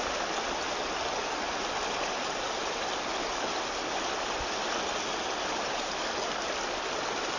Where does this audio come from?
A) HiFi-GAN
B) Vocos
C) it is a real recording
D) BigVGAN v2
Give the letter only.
C